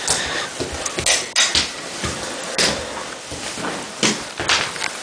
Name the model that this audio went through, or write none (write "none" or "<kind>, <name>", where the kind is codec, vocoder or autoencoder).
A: none